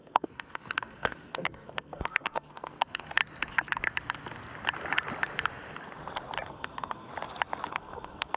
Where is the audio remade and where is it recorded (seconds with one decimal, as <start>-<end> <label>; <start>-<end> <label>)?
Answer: 0.0-3.2 remade; 3.2-6.5 recorded; 6.5-7.1 remade; 7.1-7.7 recorded; 7.7-8.4 remade